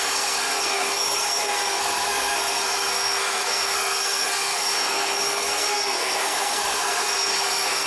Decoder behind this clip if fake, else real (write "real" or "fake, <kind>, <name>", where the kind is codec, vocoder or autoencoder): fake, codec, SNAC